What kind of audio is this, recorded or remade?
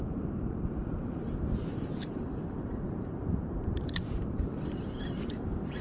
remade